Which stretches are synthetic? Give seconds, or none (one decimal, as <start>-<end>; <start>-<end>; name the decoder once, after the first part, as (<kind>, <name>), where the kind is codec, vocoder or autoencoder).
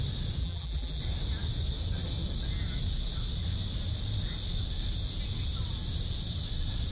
0.4-1.0 (vocoder, BigVGAN v2)